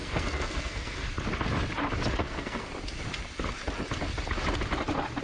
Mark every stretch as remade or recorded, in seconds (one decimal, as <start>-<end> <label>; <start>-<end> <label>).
0.0-1.1 remade; 1.1-2.2 recorded; 2.2-2.7 remade; 2.7-5.2 recorded